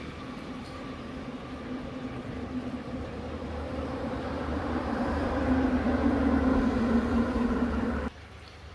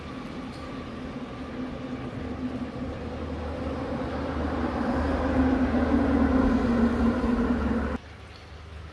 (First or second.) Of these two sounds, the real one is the second